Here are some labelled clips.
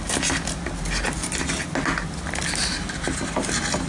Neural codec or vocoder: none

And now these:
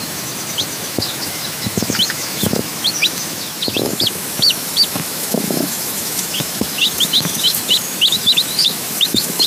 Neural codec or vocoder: autoencoder, DAC-VAE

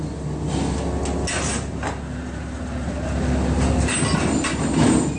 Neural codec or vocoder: none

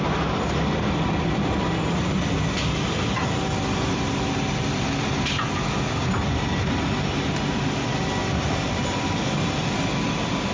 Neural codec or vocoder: none